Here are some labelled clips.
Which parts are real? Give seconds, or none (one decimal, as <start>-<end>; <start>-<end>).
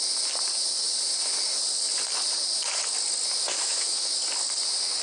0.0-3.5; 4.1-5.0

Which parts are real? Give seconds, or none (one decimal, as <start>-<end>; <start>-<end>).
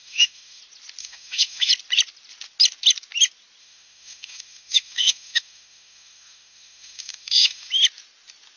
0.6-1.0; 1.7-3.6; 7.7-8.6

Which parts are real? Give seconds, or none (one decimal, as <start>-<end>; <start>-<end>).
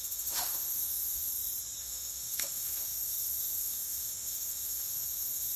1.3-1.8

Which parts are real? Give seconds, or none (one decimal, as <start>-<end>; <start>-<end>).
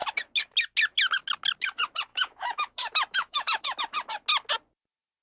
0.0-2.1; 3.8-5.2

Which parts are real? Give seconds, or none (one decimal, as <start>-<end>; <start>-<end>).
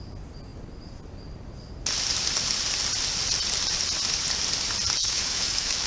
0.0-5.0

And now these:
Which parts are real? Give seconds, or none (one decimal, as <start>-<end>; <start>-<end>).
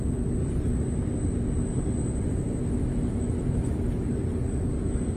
0.0-2.6; 4.1-5.2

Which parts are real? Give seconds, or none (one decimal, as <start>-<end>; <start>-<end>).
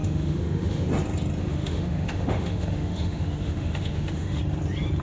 0.9-1.4; 4.4-5.0